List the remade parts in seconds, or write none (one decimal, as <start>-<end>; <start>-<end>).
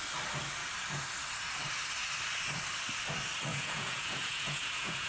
3.5-5.1